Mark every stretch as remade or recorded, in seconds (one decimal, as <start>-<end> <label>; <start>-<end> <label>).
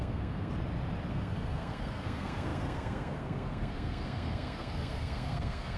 0.0-0.5 remade; 0.5-1.1 recorded; 1.1-5.8 remade